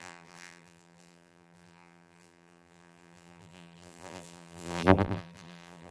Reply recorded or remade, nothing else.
remade